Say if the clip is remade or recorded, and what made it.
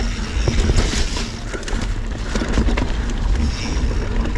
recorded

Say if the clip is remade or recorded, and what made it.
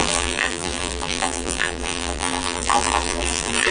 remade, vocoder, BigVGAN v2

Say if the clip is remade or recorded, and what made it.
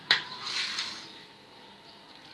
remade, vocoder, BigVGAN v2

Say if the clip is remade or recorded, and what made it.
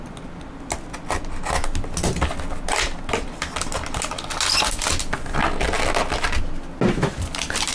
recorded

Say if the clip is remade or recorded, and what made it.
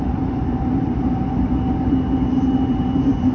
remade, vocoder, BigVGAN v2